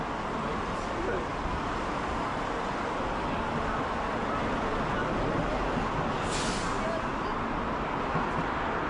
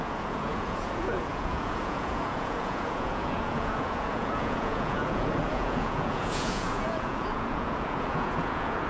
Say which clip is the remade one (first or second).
second